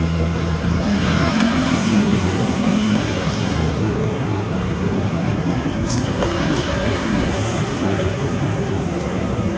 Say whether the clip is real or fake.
fake